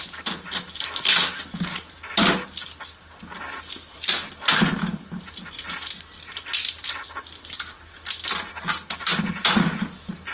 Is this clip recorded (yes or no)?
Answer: yes